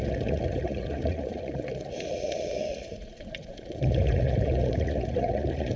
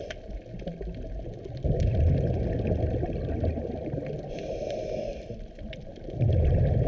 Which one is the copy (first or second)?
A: first